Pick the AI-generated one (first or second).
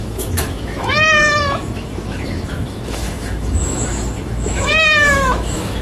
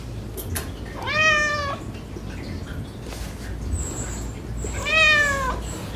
first